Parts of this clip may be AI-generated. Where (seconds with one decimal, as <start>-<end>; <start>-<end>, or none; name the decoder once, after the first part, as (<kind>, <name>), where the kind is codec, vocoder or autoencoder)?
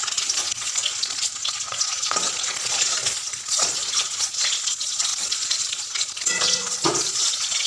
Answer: 0.0-7.7 (vocoder, Vocos)